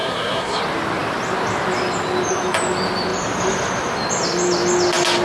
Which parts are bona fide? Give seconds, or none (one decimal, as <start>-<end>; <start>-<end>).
0.6-5.2